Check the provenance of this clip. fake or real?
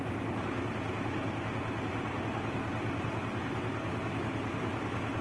real